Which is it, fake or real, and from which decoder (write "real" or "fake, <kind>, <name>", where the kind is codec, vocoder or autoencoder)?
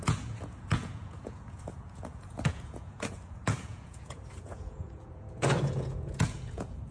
fake, vocoder, Vocos